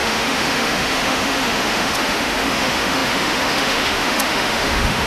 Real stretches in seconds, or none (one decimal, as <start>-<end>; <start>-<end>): none